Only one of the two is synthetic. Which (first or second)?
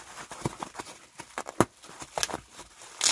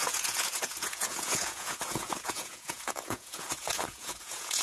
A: second